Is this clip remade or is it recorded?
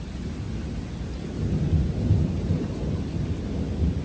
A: recorded